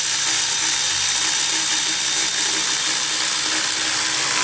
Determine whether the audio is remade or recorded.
recorded